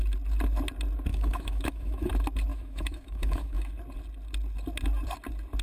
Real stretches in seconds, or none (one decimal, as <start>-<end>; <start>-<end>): 0.0-1.1; 2.1-2.5; 3.7-5.6